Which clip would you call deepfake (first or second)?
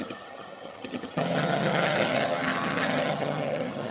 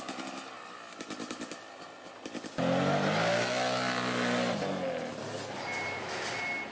first